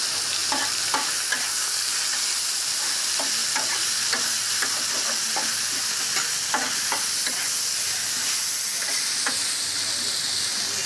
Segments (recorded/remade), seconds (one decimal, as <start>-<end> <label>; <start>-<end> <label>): 0.0-10.9 recorded